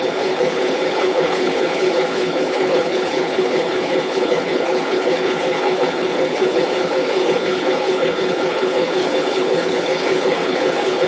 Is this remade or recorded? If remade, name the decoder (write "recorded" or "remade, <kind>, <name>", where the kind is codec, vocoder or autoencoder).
remade, codec, HILCodec